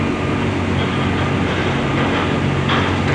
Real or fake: real